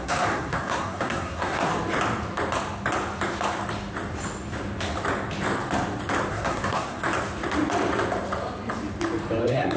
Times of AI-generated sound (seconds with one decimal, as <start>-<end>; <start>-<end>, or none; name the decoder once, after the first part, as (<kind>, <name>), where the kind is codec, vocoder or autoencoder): 0.0-1.7 (codec, SNAC); 6.3-7.0; 9.4-9.8